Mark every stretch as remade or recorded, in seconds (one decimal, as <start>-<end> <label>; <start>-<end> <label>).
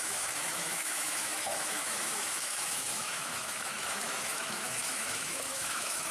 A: 0.0-6.1 remade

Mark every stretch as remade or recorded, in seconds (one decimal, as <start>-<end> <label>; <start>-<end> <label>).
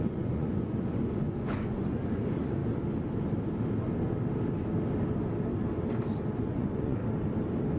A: 0.0-2.6 remade; 2.6-6.4 recorded; 6.4-7.0 remade; 7.0-7.8 recorded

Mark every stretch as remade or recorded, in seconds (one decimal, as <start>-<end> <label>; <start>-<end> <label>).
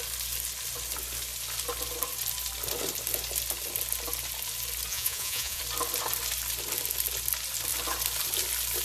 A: 0.0-4.9 recorded; 4.9-5.6 remade; 5.6-8.8 recorded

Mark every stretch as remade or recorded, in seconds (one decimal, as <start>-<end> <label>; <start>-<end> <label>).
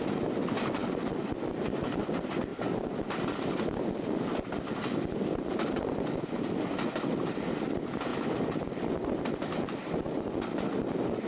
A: 0.0-11.3 recorded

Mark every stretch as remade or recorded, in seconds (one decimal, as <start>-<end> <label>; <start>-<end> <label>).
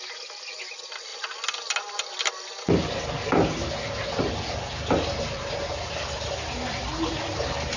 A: 0.0-7.8 recorded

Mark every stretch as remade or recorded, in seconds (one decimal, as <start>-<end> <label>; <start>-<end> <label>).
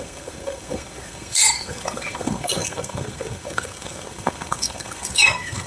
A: 0.0-5.7 remade